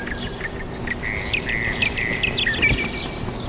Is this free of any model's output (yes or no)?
yes